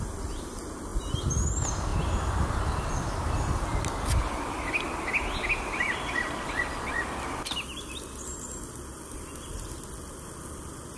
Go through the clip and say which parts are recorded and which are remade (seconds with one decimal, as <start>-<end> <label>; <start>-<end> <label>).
0.0-11.0 recorded